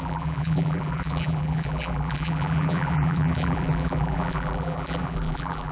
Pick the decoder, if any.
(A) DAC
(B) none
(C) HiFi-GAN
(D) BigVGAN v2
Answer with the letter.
D